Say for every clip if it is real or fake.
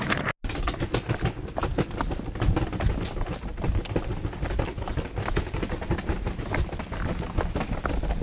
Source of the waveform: real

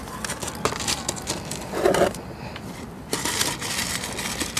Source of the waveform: real